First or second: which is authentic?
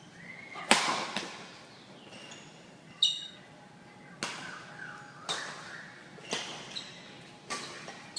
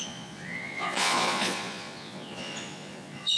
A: first